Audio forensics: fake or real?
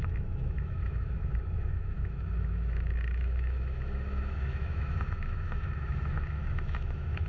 fake